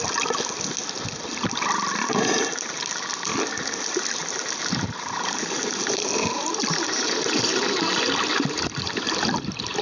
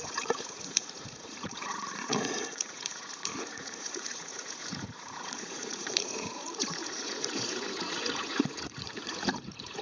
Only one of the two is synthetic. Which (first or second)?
second